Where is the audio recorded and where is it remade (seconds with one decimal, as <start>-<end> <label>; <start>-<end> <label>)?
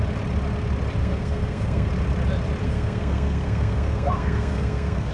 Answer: 0.0-1.0 recorded; 1.0-1.9 remade; 1.9-2.6 recorded; 2.6-5.1 remade